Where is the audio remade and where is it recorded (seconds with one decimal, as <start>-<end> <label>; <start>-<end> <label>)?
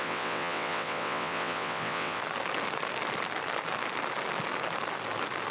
0.0-2.2 remade; 2.2-5.5 recorded